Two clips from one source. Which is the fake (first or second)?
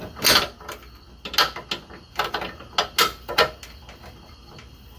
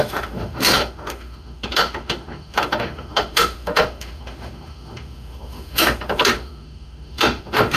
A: second